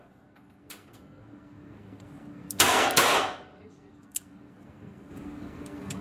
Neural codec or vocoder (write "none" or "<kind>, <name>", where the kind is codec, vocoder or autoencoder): codec, SNAC